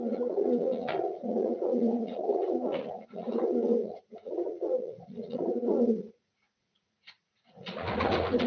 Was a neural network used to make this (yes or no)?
yes